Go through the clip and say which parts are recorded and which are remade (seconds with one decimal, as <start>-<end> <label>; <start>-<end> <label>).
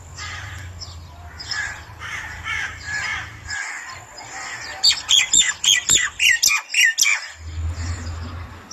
0.0-8.7 recorded